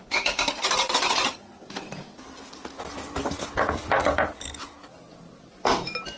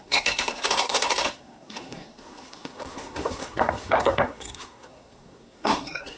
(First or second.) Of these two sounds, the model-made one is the second